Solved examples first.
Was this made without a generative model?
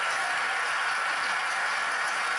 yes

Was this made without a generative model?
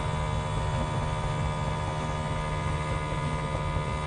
yes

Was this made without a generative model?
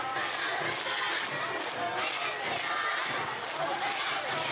yes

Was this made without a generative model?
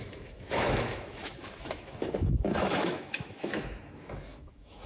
no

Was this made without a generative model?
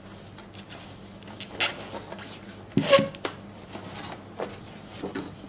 yes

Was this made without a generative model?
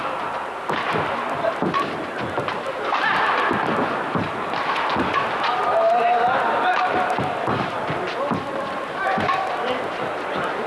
yes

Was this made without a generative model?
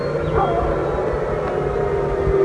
yes